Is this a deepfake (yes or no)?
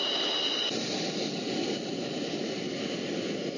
no